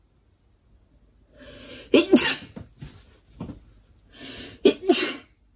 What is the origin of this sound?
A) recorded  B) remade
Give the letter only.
A